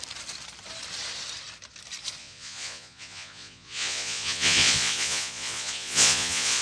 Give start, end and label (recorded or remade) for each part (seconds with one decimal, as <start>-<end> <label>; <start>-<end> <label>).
0.0-2.2 recorded; 2.2-6.6 remade